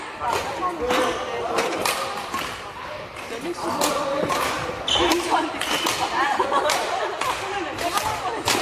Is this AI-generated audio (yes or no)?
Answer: no